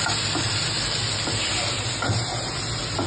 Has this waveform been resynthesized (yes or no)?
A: no